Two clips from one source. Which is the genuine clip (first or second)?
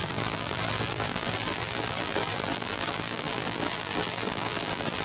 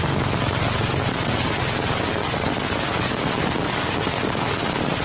second